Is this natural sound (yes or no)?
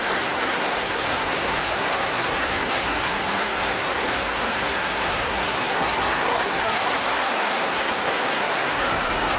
no